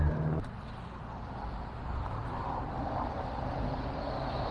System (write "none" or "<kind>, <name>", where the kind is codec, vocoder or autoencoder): none